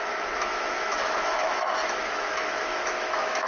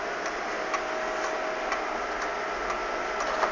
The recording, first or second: second